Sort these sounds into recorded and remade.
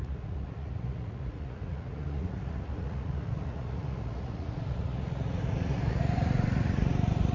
remade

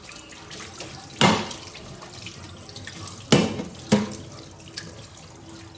recorded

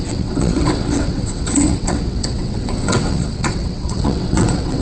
remade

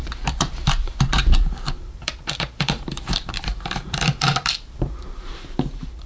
remade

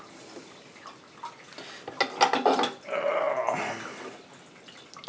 recorded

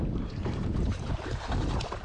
remade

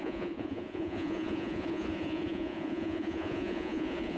remade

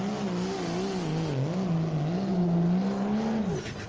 recorded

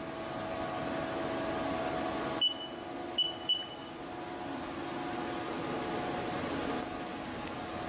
recorded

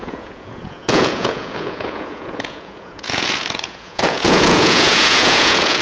remade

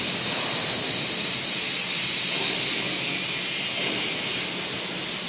recorded